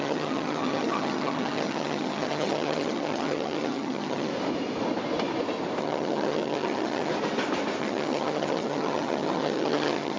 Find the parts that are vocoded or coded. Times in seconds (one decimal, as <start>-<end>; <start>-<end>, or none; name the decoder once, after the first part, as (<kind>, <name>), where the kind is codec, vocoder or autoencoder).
0.0-4.3 (vocoder, HiFi-GAN); 5.8-7.1; 7.8-10.2